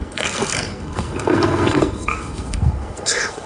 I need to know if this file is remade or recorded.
remade